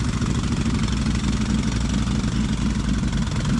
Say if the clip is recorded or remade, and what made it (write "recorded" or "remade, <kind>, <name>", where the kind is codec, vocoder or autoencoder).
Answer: recorded